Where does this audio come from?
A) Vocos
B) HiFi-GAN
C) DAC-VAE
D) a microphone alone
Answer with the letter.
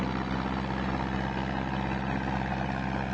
D